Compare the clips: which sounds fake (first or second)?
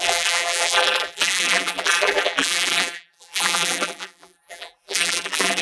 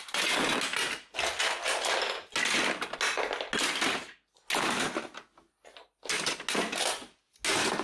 first